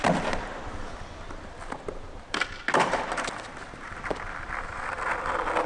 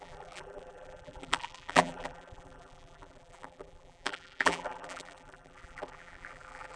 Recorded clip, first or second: first